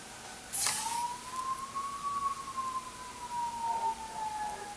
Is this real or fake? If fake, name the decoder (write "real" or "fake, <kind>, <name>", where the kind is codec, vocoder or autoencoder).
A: real